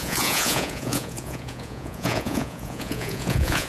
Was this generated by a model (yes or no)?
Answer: yes